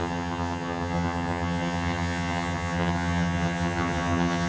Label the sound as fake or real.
fake